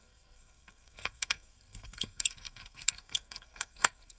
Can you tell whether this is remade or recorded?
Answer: remade